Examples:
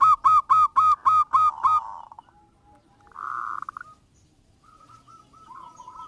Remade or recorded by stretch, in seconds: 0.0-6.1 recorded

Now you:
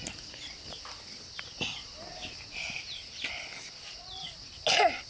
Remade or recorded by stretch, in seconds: 0.0-5.1 recorded

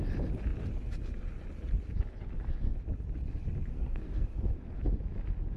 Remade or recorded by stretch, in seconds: 0.0-3.7 recorded; 3.7-4.7 remade; 4.7-5.6 recorded

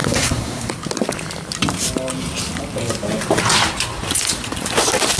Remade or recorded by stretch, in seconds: 0.0-0.7 remade; 0.7-5.2 recorded

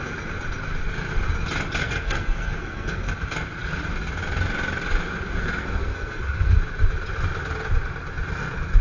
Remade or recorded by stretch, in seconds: 0.0-1.8 recorded; 1.8-3.1 remade; 3.1-5.4 recorded; 5.4-6.6 remade; 6.6-8.8 recorded